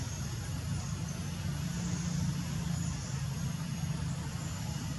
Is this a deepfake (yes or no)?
no